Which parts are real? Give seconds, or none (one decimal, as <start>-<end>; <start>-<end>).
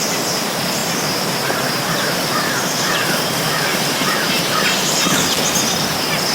none